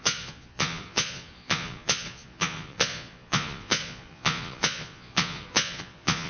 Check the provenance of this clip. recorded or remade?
remade